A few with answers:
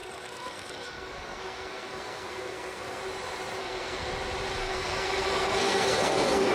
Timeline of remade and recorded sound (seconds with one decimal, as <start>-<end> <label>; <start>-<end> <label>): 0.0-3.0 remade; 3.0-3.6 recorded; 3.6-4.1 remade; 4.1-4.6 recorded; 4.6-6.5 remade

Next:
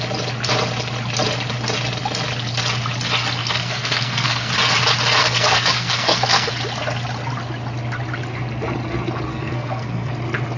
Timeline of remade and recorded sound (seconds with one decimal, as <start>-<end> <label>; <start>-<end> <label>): 0.0-3.4 recorded; 3.4-4.5 remade; 4.5-5.2 recorded; 5.2-6.5 remade; 6.5-9.3 recorded; 9.3-10.1 remade; 10.1-10.6 recorded

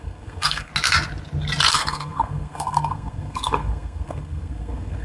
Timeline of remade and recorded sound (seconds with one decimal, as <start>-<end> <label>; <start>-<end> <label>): 0.0-0.7 remade; 0.7-1.7 recorded; 1.7-5.0 remade

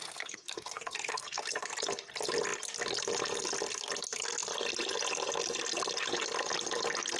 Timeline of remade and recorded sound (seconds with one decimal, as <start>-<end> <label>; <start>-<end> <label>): 0.0-1.5 remade; 1.5-7.2 recorded